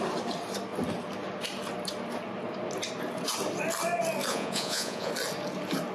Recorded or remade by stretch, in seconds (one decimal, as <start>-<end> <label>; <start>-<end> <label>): 0.0-4.3 recorded; 4.3-5.1 remade; 5.1-5.9 recorded